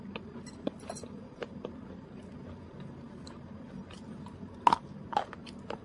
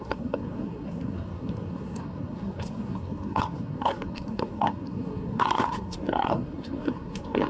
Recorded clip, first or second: first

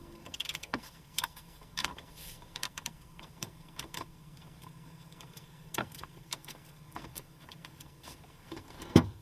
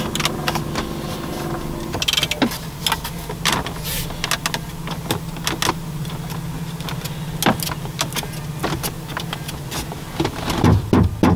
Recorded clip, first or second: second